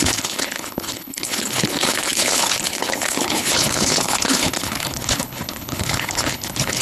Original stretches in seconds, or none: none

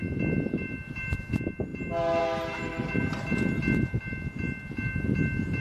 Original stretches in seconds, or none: 0.0-5.6

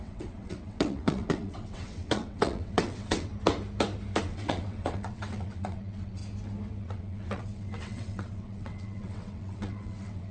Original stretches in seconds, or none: 3.3-4.2; 6.2-6.8

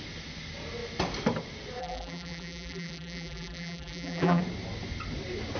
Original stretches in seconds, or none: 0.0-1.8; 4.4-5.6

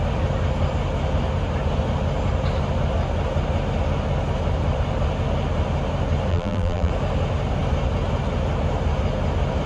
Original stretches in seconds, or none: 0.0-6.3; 6.9-9.7

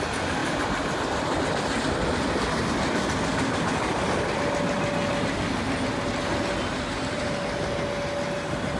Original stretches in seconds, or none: 0.0-8.8

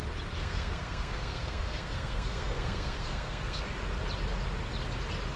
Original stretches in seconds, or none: 0.0-0.4; 3.6-5.4

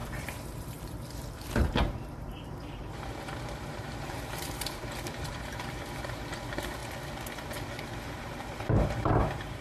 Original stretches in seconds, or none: 6.8-8.0